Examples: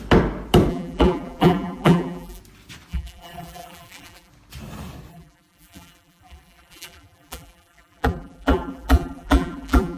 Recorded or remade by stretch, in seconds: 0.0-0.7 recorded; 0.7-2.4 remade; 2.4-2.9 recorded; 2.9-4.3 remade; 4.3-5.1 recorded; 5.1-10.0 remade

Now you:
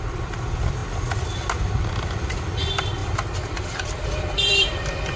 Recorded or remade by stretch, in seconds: 0.0-0.8 remade; 0.8-1.7 recorded; 1.7-5.2 remade

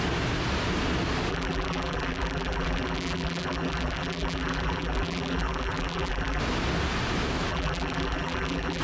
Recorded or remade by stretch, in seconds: 0.0-1.3 recorded; 1.3-6.4 remade; 6.4-7.5 recorded; 7.5-8.8 remade

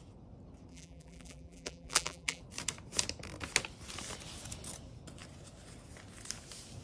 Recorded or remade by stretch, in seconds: 0.0-0.7 recorded; 0.7-2.4 remade; 2.4-6.8 recorded

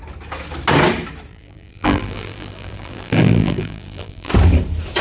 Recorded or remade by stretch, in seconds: 0.0-1.3 recorded; 1.3-4.3 remade; 4.3-5.0 recorded

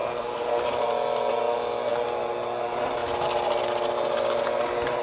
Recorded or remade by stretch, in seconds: 0.0-5.0 recorded

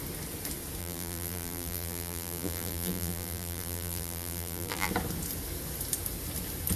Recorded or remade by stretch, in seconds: 0.0-0.8 recorded; 0.8-4.9 remade; 4.9-6.8 recorded

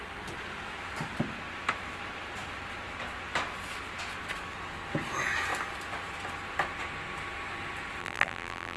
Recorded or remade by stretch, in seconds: 0.0-8.0 recorded; 8.0-8.8 remade